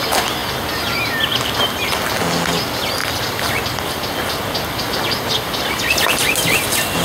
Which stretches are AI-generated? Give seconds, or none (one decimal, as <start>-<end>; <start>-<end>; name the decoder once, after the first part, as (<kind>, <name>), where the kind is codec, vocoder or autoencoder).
none